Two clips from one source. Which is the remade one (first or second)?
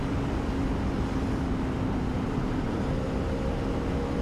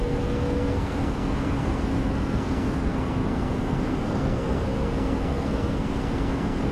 second